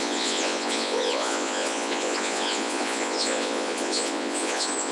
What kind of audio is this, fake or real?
fake